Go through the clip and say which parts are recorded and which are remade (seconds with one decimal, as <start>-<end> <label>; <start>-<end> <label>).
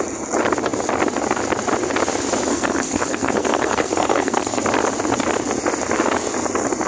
0.0-2.5 recorded; 2.5-4.6 remade; 4.6-6.9 recorded